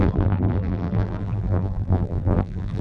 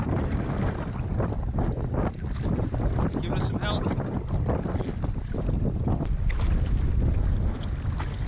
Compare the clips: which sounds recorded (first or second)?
second